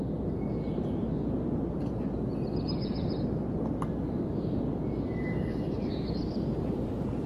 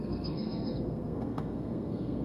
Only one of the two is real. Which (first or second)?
first